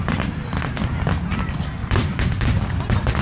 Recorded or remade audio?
remade